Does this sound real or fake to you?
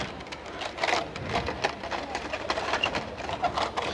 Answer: real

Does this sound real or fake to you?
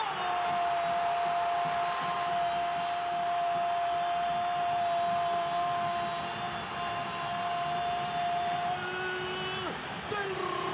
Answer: real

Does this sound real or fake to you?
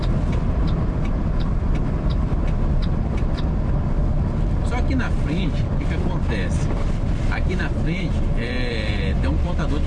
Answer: fake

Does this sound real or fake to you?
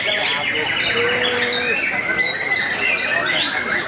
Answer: real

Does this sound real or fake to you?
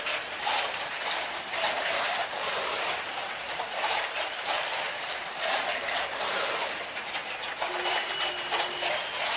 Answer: fake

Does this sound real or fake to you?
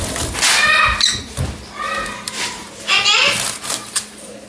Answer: real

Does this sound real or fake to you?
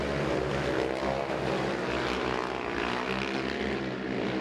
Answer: real